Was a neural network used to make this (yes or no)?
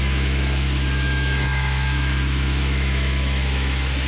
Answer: yes